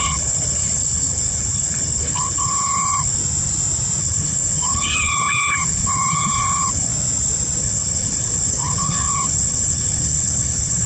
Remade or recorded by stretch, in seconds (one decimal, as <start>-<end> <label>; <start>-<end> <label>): 0.0-3.2 remade; 3.2-4.0 recorded; 4.0-6.9 remade; 6.9-7.6 recorded; 7.6-10.9 remade